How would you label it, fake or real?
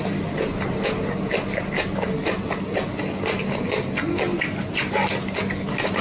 real